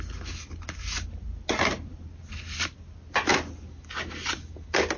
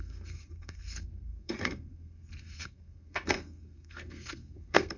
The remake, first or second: second